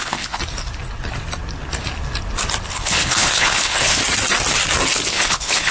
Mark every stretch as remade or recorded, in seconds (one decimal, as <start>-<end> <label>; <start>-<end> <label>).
0.0-0.4 remade; 0.4-2.7 recorded; 2.7-4.0 remade; 4.0-5.1 recorded; 5.1-5.7 remade